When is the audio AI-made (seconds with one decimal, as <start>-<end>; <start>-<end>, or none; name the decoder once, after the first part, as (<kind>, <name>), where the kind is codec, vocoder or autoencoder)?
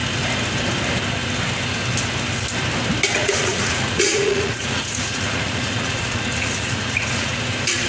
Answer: 3.2-7.4 (vocoder, Vocos)